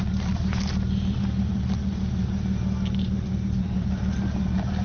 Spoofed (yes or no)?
yes